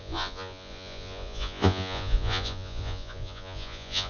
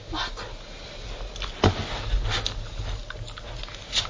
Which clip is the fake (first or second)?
first